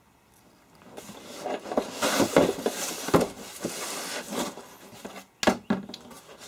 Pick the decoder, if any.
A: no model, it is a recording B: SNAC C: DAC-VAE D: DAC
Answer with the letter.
A